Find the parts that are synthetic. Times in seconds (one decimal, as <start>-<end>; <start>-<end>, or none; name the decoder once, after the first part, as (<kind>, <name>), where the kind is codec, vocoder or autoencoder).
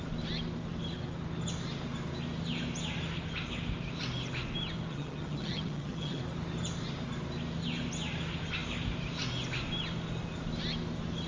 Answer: 4.9-6.2 (vocoder, HiFi-GAN)